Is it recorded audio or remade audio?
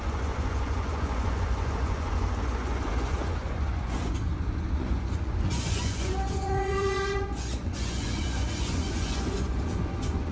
remade